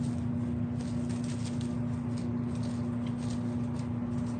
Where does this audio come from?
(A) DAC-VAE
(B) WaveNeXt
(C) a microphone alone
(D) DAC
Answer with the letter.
C